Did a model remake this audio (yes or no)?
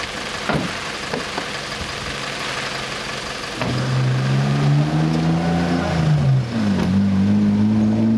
no